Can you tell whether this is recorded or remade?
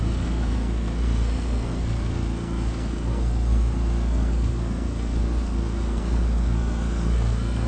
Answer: remade